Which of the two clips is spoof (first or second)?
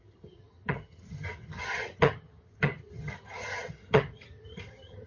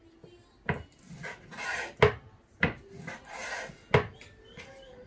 first